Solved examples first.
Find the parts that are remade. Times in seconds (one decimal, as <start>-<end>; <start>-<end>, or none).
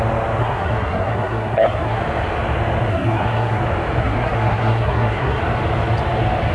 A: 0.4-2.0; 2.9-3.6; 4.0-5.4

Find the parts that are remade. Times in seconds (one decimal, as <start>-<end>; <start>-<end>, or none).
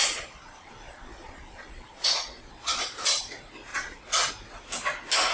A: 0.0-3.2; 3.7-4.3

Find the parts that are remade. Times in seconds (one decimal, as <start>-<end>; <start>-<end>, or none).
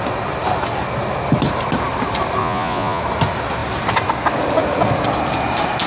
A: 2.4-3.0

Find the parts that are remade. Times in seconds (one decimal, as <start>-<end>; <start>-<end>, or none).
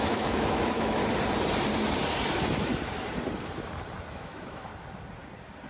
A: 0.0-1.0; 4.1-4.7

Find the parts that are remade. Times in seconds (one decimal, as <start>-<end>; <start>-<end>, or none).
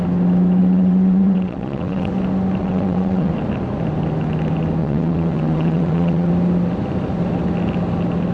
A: 0.6-2.1; 2.6-3.3; 4.8-6.3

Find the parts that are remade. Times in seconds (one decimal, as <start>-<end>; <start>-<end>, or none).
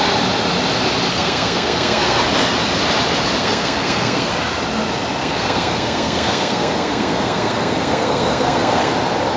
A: 1.1-2.2; 3.4-4.3; 5.2-8.9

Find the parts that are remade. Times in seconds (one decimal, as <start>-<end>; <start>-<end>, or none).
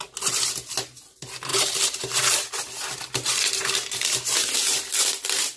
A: none